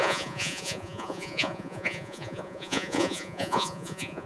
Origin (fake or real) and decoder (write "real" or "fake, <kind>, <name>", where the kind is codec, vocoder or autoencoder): fake, vocoder, Vocos